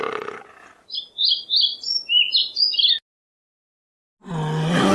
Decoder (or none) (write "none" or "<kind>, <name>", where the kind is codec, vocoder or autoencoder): none